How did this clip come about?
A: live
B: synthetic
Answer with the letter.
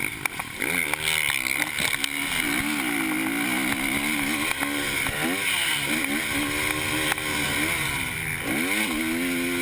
A